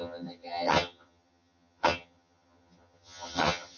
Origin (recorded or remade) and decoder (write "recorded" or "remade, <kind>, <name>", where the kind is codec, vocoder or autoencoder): remade, vocoder, HiFi-GAN